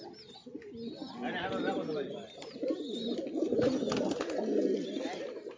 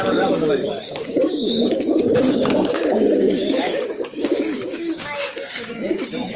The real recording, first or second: first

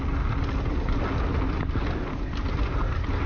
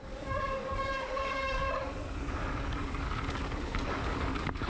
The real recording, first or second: first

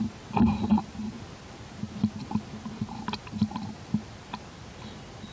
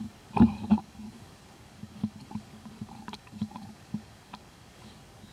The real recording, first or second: first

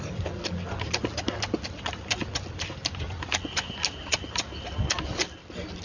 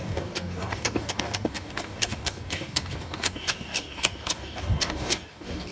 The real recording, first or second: first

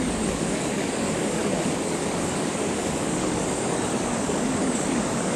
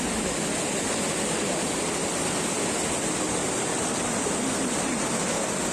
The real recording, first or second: second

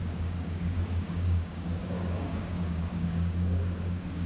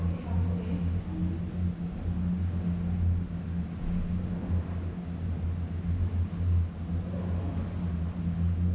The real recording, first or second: second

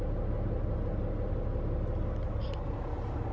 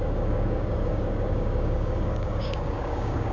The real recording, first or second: first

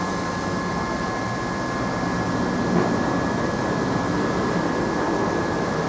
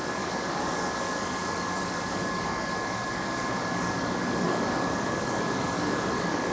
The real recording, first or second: first